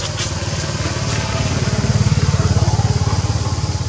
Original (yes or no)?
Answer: yes